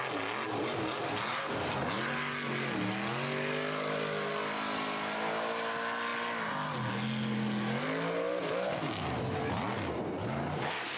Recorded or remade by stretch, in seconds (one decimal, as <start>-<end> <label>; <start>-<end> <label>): 0.0-11.0 recorded